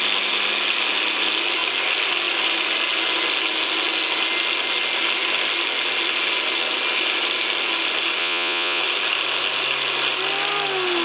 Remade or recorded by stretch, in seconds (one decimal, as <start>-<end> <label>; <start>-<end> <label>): 0.0-8.2 recorded; 8.2-8.8 remade; 8.8-11.0 recorded